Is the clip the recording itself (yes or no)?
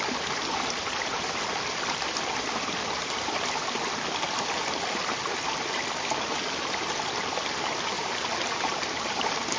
yes